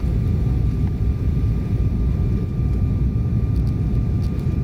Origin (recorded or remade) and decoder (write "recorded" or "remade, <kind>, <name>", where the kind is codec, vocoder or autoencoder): remade, vocoder, BigVGAN v2